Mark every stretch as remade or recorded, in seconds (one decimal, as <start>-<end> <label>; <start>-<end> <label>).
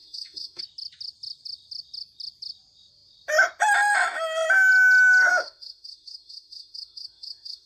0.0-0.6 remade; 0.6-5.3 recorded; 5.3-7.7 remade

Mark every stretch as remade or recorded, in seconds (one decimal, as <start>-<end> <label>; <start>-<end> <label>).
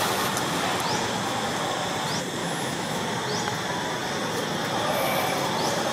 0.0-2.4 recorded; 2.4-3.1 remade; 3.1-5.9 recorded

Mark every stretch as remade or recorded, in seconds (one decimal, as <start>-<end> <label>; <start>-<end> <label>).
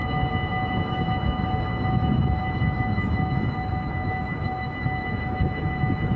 0.0-6.2 remade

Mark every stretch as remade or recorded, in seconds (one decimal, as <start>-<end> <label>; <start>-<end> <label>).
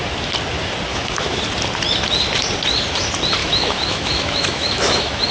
0.0-0.9 recorded; 0.9-1.4 remade; 1.4-3.4 recorded; 3.4-5.3 remade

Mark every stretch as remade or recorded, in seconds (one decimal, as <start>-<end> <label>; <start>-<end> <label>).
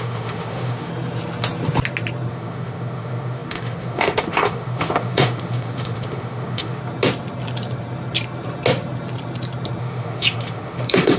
0.0-0.9 remade; 0.9-2.3 recorded; 2.3-6.8 remade; 6.8-9.8 recorded; 9.8-11.2 remade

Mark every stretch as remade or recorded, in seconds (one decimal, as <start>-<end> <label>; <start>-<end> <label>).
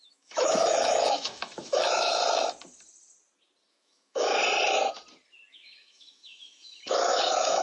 0.0-2.2 remade; 2.2-3.7 recorded; 3.7-4.4 remade; 4.4-5.5 recorded; 5.5-7.6 remade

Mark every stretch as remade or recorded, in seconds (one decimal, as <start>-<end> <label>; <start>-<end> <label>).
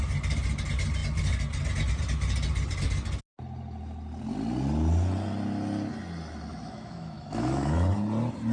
0.0-6.5 recorded; 6.5-7.9 remade; 7.9-8.5 recorded